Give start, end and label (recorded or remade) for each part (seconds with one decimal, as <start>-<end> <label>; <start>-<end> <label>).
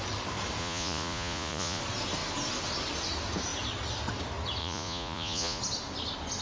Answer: 0.0-0.6 recorded; 0.6-1.8 remade; 1.8-4.6 recorded; 4.6-5.6 remade; 5.6-6.4 recorded